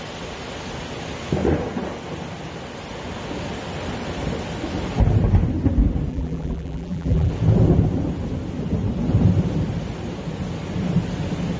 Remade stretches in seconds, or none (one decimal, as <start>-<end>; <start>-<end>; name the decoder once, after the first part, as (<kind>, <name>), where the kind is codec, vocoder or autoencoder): 6.1-7.3 (vocoder, BigVGAN v2)